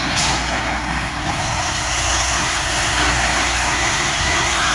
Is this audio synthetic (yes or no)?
yes